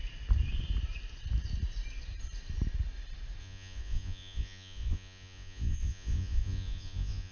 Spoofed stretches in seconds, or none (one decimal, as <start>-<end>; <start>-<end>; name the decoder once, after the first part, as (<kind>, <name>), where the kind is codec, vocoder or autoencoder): 3.4-7.3 (vocoder, Vocos)